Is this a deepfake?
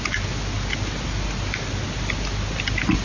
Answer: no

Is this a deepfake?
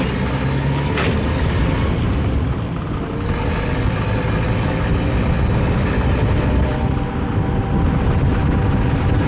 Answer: no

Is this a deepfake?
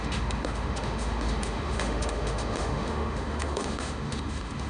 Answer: yes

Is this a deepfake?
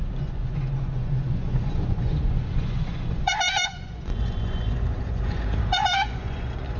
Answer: yes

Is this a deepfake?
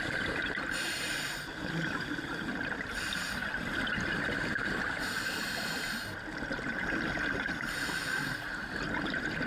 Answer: no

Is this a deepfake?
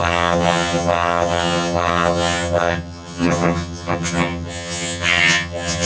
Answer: yes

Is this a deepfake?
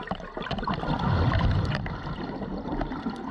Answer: yes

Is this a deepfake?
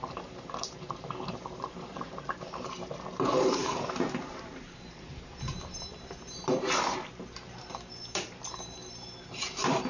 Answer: yes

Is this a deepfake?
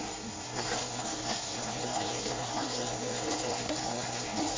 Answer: yes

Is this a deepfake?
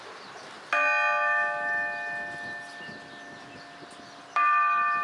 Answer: no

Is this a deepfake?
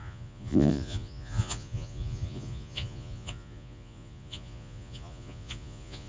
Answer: yes